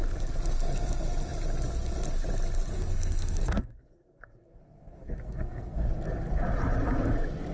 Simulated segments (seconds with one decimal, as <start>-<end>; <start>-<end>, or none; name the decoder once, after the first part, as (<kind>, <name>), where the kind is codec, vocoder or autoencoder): 2.7-5.9 (codec, SNAC)